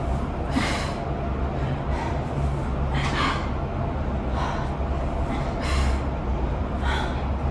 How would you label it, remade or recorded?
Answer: recorded